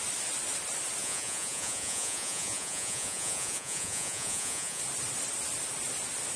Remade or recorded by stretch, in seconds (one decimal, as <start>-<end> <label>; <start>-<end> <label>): 0.0-1.0 recorded; 1.0-4.8 remade; 4.8-6.4 recorded